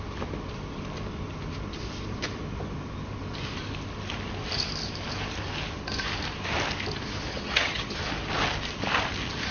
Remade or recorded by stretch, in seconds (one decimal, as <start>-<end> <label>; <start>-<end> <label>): 0.0-7.3 recorded; 7.3-8.0 remade; 8.0-9.5 recorded